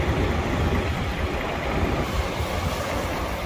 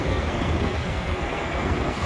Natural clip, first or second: first